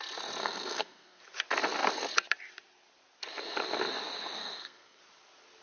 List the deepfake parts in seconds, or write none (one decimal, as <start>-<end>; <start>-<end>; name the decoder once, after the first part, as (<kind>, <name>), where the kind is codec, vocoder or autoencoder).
0.4-1.2 (codec, SNAC); 4.4-5.0